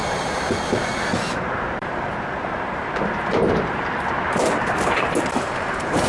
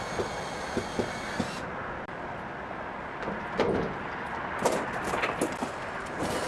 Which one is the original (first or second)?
second